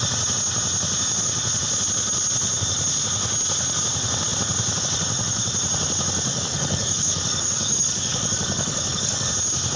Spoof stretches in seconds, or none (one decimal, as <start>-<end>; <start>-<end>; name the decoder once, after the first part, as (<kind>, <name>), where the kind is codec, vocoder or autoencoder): 6.3-9.3 (codec, DAC)